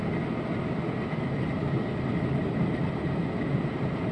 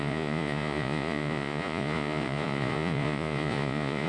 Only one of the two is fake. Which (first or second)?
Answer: second